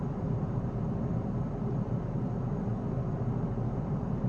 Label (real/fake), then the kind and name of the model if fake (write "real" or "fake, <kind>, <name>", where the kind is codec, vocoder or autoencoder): fake, vocoder, BigVGAN v2